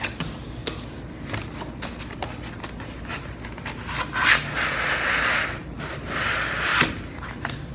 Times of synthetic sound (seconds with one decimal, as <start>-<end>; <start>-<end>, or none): 6.7-7.7